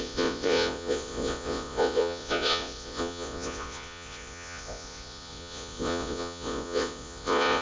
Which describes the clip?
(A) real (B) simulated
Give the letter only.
B